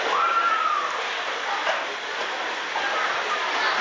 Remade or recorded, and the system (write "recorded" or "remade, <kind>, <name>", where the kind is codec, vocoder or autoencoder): recorded